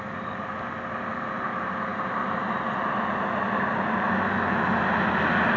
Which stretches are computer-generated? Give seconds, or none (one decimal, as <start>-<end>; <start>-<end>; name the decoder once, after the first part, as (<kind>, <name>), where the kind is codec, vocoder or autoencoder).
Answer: none